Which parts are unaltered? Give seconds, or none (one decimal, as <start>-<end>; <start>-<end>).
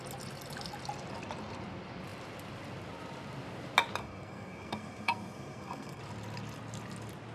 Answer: 0.0-4.0; 6.0-7.3